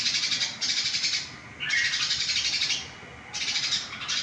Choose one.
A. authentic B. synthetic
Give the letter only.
A